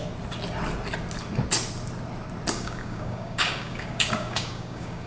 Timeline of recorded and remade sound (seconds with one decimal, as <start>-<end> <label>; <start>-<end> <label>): 0.0-2.5 recorded; 2.5-5.1 remade